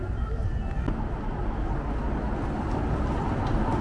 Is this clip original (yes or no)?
yes